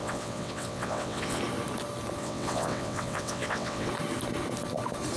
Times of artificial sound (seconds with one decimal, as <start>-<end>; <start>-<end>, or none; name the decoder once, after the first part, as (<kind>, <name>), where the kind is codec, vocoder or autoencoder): 0.0-1.4 (vocoder, WaveNeXt); 2.2-3.9